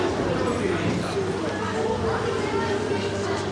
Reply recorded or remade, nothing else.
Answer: recorded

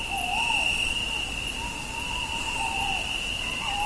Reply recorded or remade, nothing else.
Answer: recorded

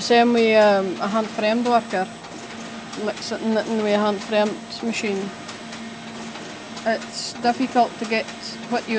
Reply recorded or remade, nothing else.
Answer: recorded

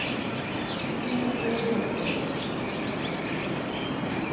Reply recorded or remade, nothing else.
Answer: recorded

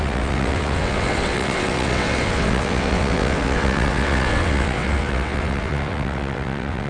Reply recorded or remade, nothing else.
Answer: remade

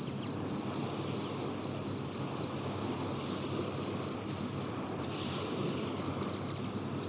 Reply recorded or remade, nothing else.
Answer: recorded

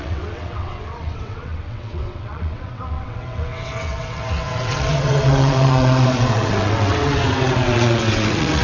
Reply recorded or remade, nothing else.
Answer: remade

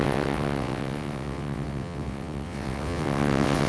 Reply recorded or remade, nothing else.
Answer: remade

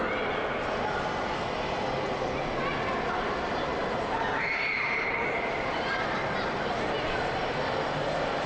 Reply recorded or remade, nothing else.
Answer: recorded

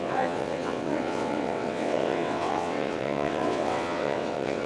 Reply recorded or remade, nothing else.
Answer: remade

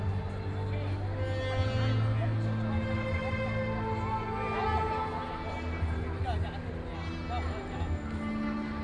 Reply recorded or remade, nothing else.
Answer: recorded